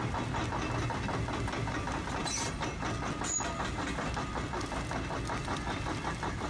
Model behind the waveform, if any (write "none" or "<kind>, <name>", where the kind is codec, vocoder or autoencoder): none